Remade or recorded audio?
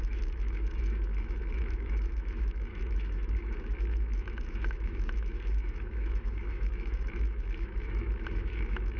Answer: remade